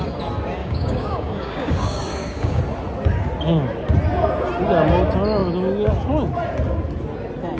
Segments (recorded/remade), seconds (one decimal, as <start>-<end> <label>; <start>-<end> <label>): 0.0-0.6 recorded; 0.6-2.6 remade; 2.6-7.6 recorded